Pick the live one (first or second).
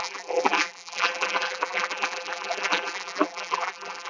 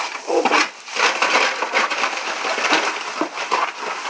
second